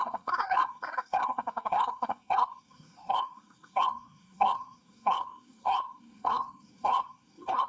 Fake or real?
fake